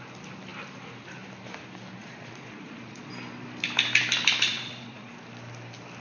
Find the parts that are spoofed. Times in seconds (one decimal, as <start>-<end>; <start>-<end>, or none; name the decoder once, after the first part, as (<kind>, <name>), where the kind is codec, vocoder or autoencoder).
2.0-3.1 (vocoder, Vocos); 4.5-5.1